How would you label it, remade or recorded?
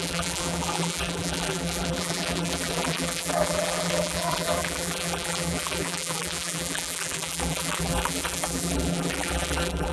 remade